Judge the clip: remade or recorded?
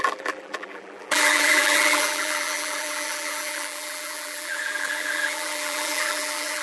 remade